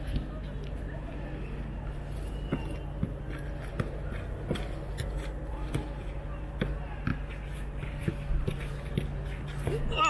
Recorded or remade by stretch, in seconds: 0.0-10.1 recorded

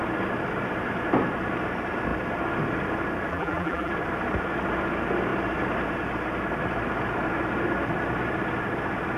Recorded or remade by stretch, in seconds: 0.0-3.3 recorded; 3.3-3.9 remade; 3.9-9.2 recorded